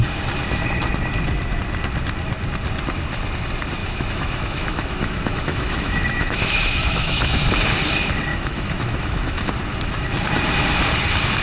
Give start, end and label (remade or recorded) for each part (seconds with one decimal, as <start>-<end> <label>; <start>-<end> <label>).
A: 0.0-3.8 recorded; 3.8-7.5 remade; 7.5-8.3 recorded; 8.3-9.5 remade; 9.5-11.4 recorded